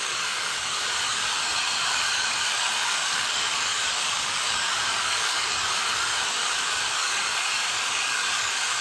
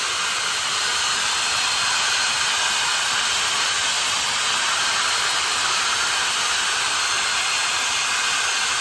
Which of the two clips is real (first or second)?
second